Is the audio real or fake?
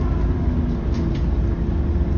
real